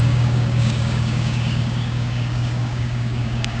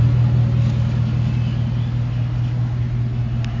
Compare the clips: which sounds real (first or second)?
second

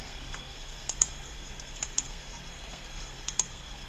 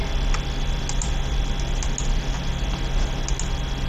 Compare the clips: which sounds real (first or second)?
second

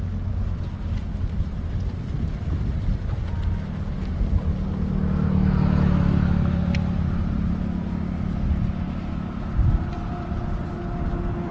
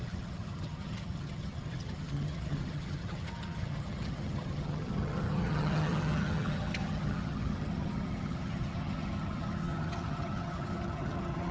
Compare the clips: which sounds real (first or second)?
first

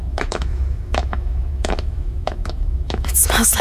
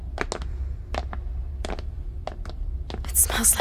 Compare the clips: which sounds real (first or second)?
second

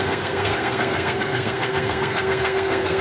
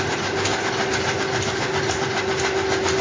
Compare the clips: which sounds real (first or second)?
second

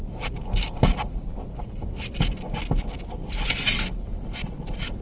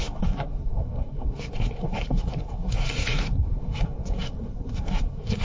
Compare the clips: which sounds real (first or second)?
first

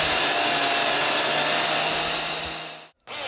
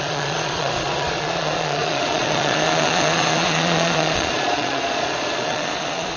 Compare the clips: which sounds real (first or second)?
first